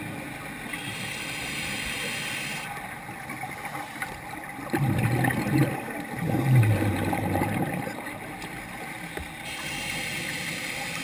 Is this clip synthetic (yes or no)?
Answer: no